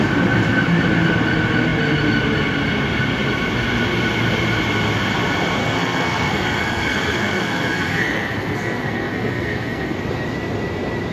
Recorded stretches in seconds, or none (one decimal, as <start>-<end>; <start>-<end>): 0.0-5.6; 10.0-11.1

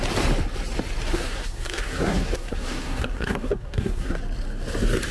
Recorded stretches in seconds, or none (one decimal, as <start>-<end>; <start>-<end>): 0.0-1.1; 4.2-5.1

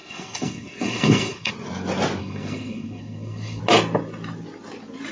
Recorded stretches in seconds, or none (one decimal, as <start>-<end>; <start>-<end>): 1.5-2.2; 3.6-5.1

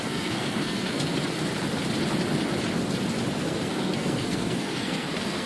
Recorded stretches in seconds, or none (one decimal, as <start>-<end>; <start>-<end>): 1.1-3.4

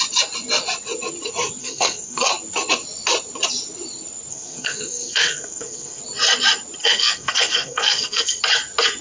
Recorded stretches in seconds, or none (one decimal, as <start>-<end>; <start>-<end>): 0.0-1.6; 2.3-4.3; 6.0-6.8; 8.4-9.0

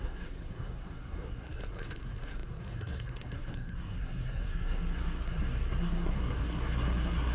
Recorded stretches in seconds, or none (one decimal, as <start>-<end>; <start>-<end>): none

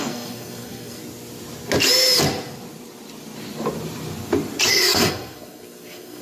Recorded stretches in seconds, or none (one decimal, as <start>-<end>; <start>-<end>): 1.0-4.7

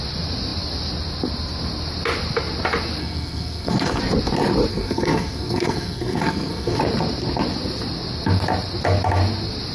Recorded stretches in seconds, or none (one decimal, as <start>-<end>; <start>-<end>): 0.0-3.0; 4.0-4.7; 6.8-9.7